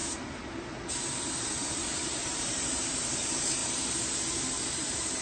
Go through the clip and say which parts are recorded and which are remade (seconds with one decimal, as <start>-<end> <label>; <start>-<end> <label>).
0.0-3.6 remade; 3.6-4.3 recorded; 4.3-5.2 remade